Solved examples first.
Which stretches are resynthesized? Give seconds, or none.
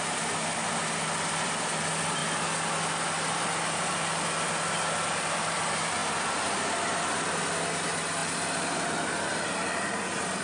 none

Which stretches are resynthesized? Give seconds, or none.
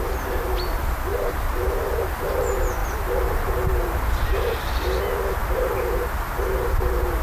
1.1-1.8 (vocoder, BigVGAN v2); 2.8-4.0; 5.4-5.9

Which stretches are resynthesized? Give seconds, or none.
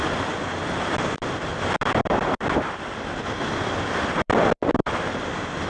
1.5-4.9 (vocoder, BigVGAN v2)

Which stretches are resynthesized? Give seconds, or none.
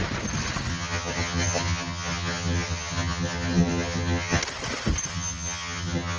0.7-4.4 (vocoder, HiFi-GAN); 5.1-6.2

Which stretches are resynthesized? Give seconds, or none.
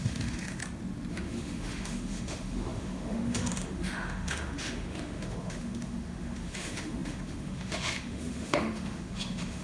0.0-0.6 (autoencoder, DAC-VAE); 1.1-9.6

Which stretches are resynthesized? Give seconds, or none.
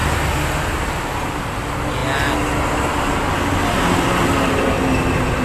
none